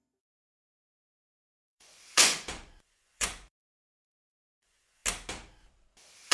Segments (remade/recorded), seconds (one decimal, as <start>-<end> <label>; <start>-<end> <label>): 0.0-5.0 remade; 5.0-6.3 recorded